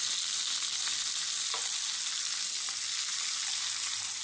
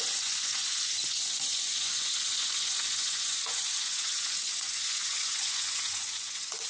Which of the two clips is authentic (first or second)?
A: first